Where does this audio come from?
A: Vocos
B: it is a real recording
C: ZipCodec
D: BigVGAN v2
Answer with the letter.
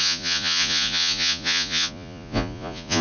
A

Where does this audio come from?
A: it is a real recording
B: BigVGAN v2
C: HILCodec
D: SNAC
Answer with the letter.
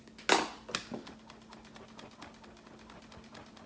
A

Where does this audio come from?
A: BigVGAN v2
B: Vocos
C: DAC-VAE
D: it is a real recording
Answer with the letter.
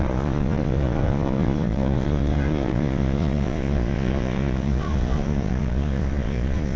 B